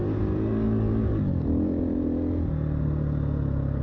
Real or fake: real